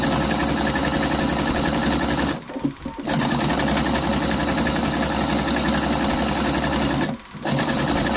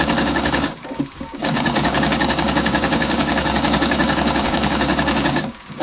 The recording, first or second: first